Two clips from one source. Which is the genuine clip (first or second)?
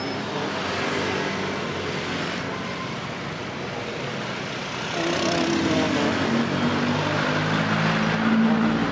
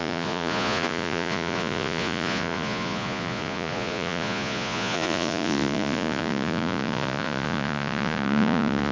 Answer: first